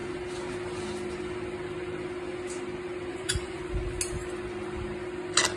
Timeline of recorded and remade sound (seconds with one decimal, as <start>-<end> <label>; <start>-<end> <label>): 0.0-3.1 recorded; 3.1-3.6 remade; 3.6-5.6 recorded